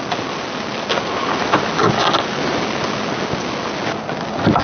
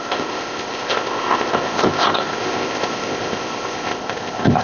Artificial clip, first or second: second